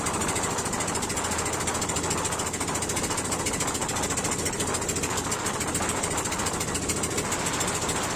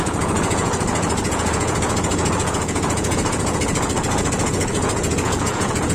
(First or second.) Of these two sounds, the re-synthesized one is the second